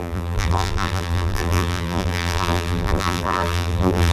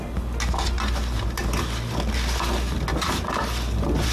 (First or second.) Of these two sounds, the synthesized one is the first